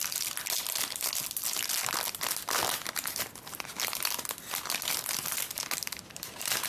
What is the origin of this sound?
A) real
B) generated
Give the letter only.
A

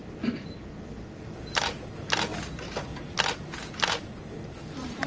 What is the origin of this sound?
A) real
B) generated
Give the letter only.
A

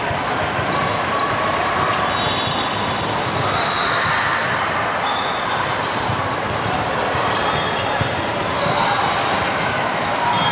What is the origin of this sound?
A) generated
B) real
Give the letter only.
A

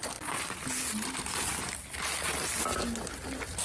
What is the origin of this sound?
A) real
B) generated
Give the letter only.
A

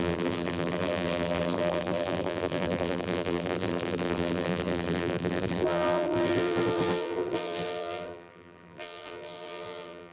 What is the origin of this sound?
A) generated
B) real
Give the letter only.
A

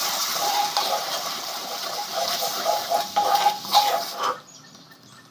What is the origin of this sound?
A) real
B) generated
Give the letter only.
B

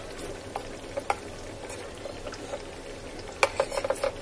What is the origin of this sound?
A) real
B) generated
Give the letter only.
A